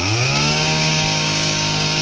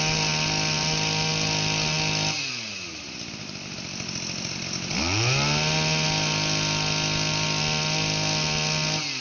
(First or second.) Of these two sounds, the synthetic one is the first